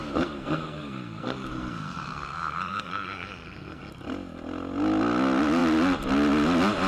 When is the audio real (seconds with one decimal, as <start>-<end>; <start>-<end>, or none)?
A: 3.8-6.9

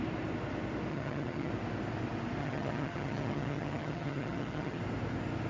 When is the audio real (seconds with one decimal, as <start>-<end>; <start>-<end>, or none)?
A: 0.0-0.9; 1.5-2.4; 4.8-5.5